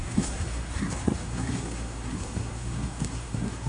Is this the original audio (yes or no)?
no